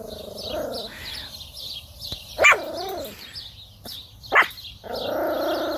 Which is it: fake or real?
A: real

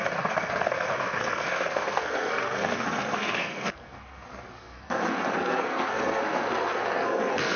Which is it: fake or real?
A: fake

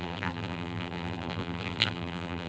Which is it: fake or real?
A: fake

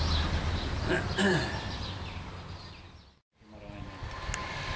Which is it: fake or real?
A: real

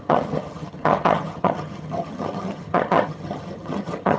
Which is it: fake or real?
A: fake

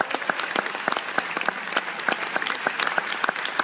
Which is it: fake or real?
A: real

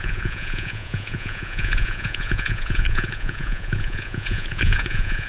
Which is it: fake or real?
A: fake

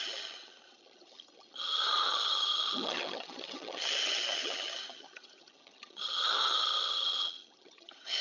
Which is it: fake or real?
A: fake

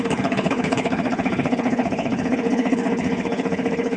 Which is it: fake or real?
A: fake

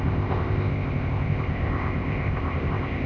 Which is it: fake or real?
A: fake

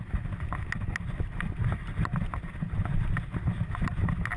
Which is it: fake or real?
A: real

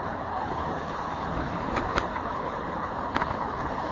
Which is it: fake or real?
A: fake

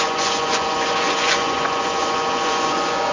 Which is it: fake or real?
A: fake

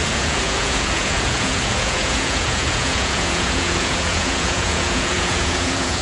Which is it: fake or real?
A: fake